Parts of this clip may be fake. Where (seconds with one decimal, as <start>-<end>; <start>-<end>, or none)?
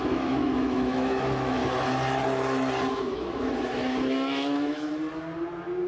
0.0-1.6; 2.9-4.9